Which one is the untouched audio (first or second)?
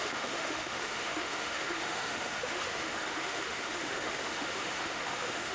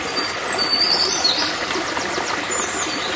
second